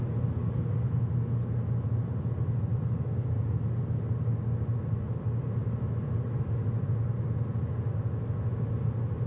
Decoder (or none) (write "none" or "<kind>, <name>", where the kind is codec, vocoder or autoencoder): none